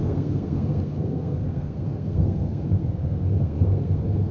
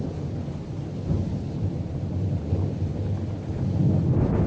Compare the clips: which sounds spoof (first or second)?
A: first